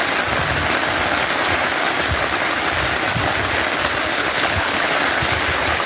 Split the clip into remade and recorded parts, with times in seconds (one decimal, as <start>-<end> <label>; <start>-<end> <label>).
0.0-4.2 recorded; 4.2-4.9 remade; 4.9-5.9 recorded